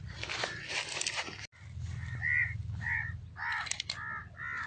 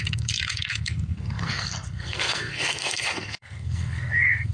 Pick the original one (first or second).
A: first